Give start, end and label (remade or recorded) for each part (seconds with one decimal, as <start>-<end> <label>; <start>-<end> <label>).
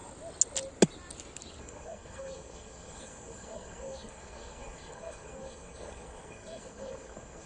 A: 0.0-1.6 recorded; 1.6-7.5 remade